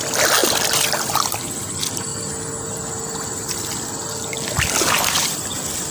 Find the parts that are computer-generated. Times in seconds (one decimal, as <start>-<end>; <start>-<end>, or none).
0.4-1.4; 2.1-5.9